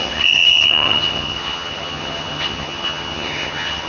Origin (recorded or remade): remade